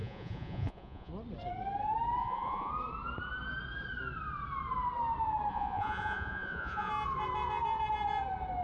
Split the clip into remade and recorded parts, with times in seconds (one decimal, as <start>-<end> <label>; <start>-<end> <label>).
0.0-1.1 remade; 1.1-2.2 recorded; 2.2-2.7 remade; 2.7-5.5 recorded; 5.5-6.9 remade; 6.9-8.6 recorded